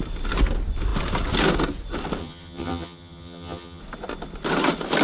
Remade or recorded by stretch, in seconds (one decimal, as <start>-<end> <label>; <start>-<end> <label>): 0.0-2.2 recorded; 2.2-3.8 remade; 3.8-5.0 recorded

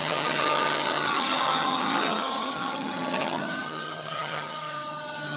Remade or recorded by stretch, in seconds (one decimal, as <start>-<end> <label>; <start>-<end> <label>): 0.0-5.4 remade

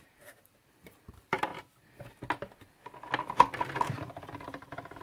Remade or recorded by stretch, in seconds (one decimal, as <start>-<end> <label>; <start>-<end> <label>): 0.0-1.5 remade; 1.5-3.9 recorded; 3.9-5.0 remade

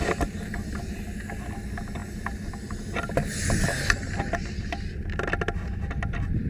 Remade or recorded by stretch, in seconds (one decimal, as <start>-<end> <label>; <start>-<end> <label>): 0.0-6.5 recorded